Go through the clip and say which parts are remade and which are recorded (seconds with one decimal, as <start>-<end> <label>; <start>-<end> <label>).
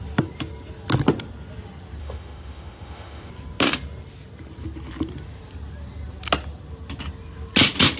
0.0-2.0 recorded; 2.0-3.3 remade; 3.3-8.0 recorded